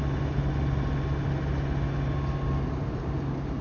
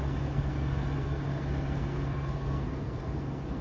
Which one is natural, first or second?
first